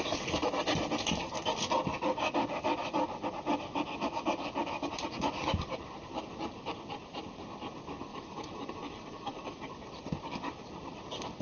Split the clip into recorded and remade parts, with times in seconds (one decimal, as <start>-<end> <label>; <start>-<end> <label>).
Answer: 0.0-8.1 recorded; 8.1-9.6 remade; 9.6-11.4 recorded